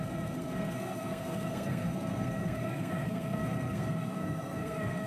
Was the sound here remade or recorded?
remade